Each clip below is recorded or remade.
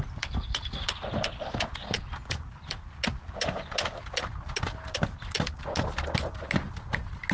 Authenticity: recorded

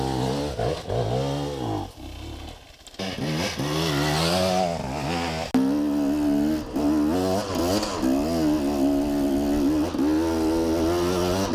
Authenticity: recorded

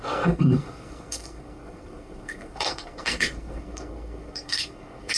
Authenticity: remade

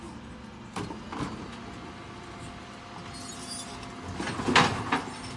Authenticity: recorded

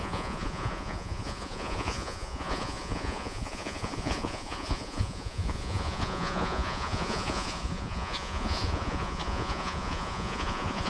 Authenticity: remade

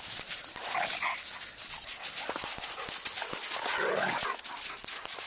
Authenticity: recorded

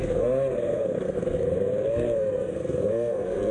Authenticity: remade